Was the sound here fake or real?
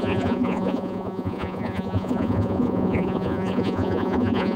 fake